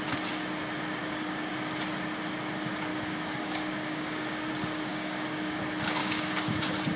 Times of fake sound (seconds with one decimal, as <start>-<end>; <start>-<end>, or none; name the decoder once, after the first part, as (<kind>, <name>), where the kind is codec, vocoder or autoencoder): 1.0-1.5 (codec, DAC); 2.9-4.5; 4.9-5.6; 6.0-6.6

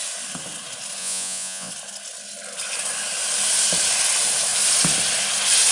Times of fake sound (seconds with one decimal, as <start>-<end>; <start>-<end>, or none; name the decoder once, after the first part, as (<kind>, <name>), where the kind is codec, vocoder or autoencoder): 1.0-1.7 (vocoder, Vocos)